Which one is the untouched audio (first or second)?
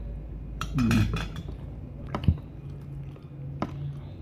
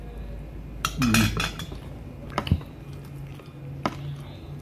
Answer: second